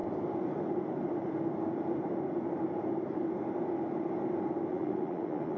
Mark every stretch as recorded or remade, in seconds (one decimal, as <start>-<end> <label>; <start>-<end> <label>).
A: 0.0-4.7 recorded; 4.7-5.6 remade